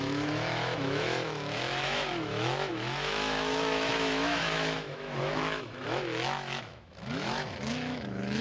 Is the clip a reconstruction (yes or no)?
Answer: yes